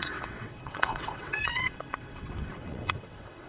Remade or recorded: remade